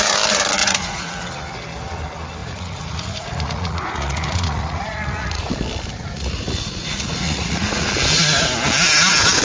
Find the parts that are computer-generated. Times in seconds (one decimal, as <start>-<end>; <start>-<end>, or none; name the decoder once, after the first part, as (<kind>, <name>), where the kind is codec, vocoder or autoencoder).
0.6-1.1 (vocoder, Vocos); 2.4-5.5; 5.9-7.9